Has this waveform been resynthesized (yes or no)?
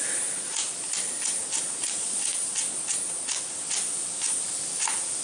no